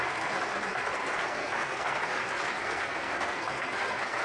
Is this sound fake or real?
fake